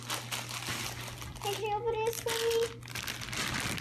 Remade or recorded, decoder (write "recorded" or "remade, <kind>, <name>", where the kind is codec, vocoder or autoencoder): recorded